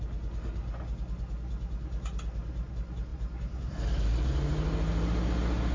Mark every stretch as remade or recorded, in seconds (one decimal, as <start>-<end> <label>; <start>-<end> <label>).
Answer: 0.0-5.7 recorded